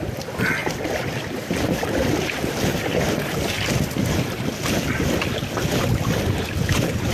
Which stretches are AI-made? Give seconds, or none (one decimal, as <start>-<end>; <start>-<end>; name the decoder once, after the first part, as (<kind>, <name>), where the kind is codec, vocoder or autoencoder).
none